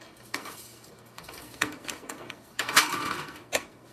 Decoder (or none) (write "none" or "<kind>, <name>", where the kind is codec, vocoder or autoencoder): codec, SNAC